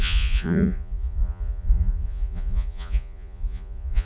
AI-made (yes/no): yes